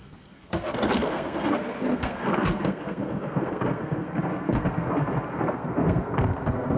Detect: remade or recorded remade